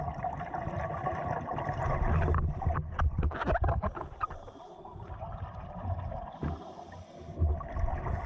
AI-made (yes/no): no